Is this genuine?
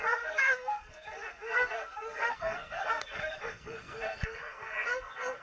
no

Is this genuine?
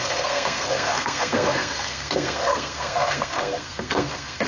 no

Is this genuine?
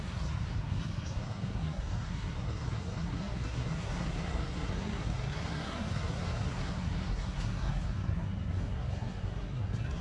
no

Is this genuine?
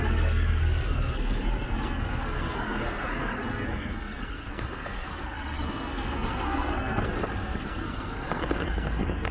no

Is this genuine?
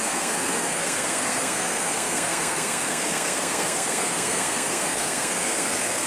no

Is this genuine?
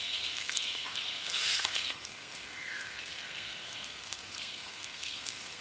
no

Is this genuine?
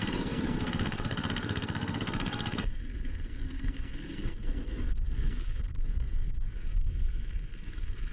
no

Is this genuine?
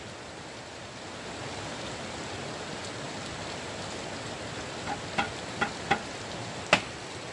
yes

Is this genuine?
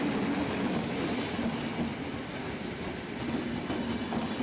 yes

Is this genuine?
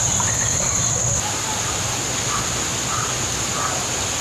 yes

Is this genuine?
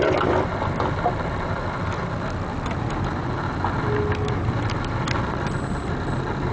yes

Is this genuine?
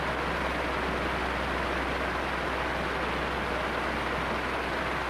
yes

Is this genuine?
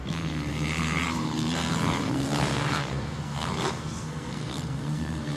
no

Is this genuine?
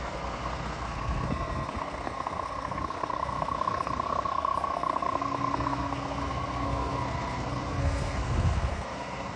no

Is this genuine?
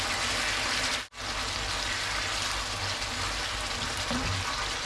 yes